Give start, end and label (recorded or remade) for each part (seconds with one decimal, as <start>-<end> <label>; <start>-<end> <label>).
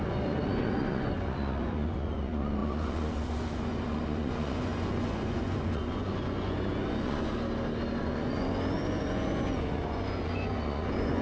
0.0-7.3 remade; 7.3-8.0 recorded; 8.0-11.2 remade